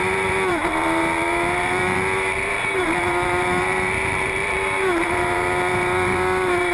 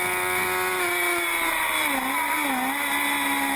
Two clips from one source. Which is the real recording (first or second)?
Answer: second